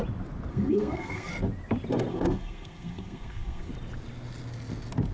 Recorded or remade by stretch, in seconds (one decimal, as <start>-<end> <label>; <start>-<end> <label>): 0.0-0.5 recorded; 0.5-1.3 remade; 1.3-2.1 recorded; 2.1-3.7 remade; 3.7-5.1 recorded